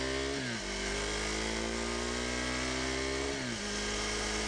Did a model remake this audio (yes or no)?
no